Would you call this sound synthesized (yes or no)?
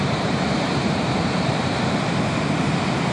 yes